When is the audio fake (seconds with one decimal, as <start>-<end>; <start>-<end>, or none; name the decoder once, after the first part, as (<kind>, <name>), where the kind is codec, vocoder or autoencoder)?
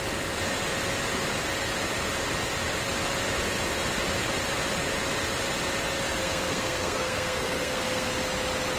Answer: 6.2-8.1 (codec, SNAC)